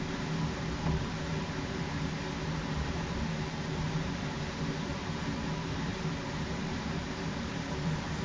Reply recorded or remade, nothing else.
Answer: remade